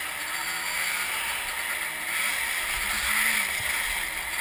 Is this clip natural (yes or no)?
yes